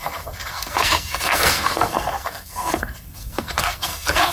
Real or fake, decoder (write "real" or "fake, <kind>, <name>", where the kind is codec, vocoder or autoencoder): fake, codec, SNAC